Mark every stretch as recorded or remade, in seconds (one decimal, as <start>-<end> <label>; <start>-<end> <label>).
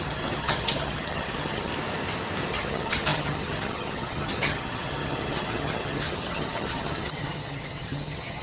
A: 0.0-1.7 remade; 1.7-2.5 recorded; 2.5-8.4 remade